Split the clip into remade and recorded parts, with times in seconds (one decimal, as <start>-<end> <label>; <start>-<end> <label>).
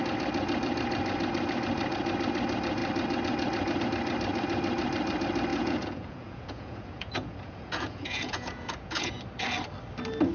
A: 0.0-5.5 recorded; 5.5-9.1 remade; 9.1-10.3 recorded